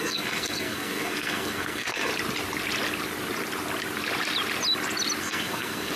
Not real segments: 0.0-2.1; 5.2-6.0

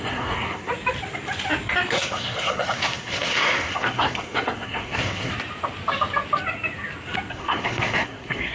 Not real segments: 0.0-0.7; 1.9-5.3; 7.3-8.5